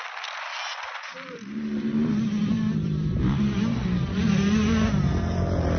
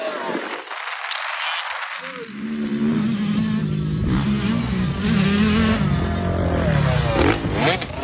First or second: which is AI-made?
first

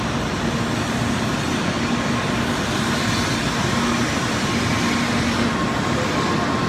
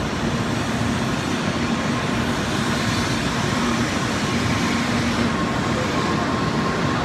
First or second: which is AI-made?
second